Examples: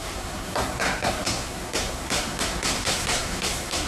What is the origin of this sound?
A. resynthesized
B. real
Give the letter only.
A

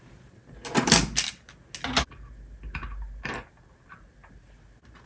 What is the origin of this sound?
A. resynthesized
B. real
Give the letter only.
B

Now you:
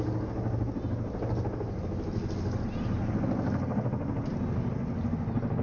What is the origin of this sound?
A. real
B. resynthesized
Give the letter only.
A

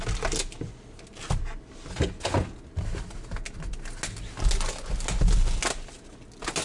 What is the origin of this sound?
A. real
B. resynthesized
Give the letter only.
A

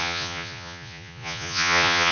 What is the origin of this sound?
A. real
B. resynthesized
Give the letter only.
B